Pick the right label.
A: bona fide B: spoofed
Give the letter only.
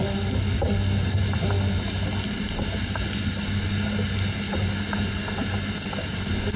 A